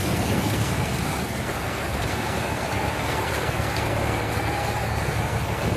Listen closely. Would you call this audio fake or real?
fake